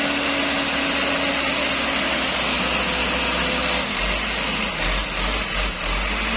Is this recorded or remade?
recorded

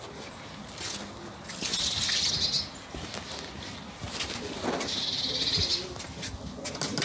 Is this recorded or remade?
recorded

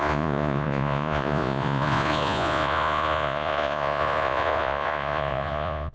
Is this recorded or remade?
remade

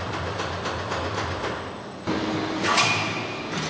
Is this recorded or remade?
recorded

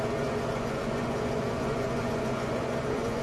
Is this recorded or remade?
remade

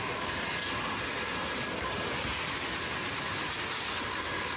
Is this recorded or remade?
recorded